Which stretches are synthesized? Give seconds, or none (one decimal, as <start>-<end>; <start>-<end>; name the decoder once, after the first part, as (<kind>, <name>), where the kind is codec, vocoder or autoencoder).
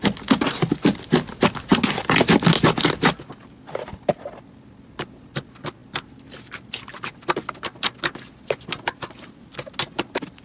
none